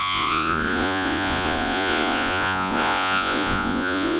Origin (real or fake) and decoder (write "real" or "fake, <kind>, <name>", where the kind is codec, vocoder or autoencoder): fake, vocoder, Vocos